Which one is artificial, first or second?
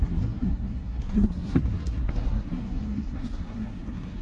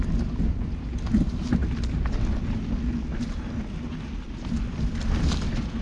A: first